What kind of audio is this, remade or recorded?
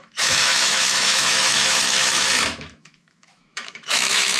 remade